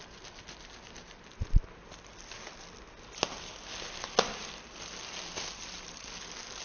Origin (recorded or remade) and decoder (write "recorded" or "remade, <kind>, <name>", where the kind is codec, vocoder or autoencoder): recorded